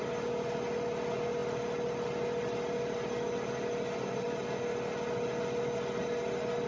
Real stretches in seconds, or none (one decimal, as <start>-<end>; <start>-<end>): 0.0-6.7